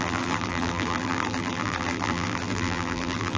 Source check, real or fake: fake